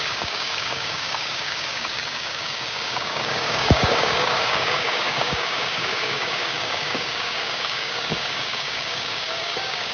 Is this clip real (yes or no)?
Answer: no